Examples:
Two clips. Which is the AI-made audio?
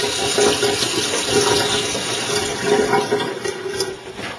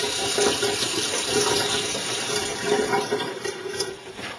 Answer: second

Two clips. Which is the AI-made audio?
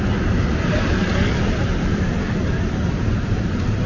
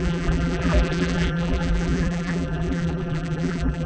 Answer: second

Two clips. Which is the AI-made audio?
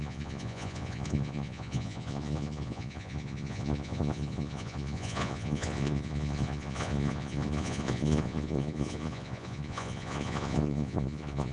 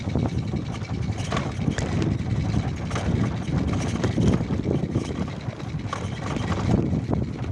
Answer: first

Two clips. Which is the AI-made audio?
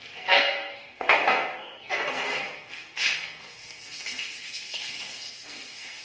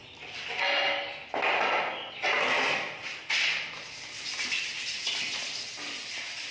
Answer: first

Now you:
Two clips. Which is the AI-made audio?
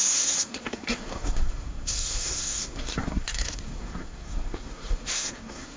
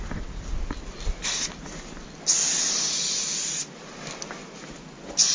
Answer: first